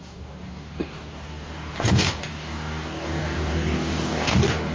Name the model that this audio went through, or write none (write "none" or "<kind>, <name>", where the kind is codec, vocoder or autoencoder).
codec, DAC